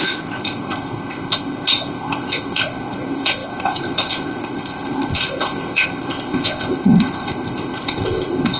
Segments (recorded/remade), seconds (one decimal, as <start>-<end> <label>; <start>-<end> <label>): 0.0-8.6 remade